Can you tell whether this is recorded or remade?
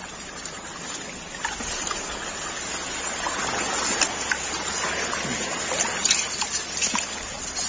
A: recorded